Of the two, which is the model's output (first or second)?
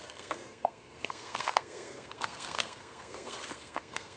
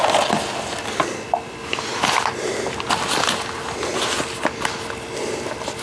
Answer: first